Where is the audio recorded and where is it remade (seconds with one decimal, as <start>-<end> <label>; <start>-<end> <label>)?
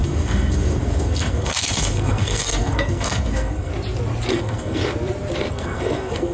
0.0-3.7 remade; 3.7-4.3 recorded; 4.3-4.8 remade; 4.8-5.5 recorded; 5.5-6.3 remade